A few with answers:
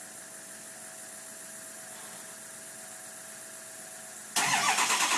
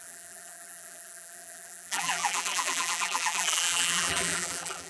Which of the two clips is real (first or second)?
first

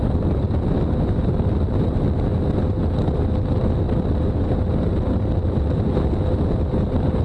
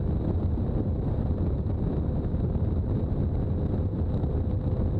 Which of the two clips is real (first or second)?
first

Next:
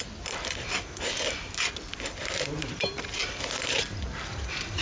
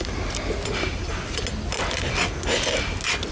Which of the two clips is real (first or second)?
second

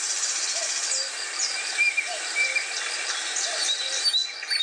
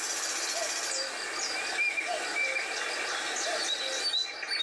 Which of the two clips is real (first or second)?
second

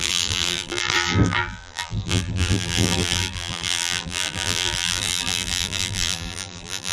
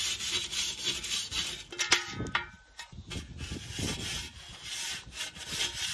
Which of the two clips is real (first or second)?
second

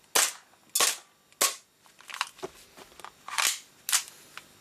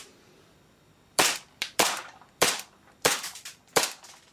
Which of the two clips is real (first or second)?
first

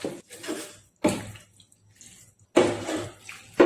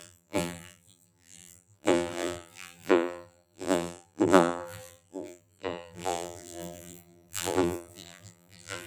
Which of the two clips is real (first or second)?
first